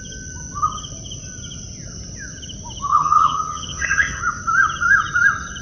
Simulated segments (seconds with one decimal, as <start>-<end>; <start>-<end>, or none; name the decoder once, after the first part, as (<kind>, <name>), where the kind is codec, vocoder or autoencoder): 2.9-4.2 (vocoder, HiFi-GAN)